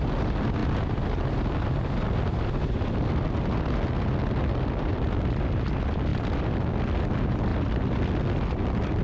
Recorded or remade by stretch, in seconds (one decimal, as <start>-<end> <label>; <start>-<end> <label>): 0.0-9.0 recorded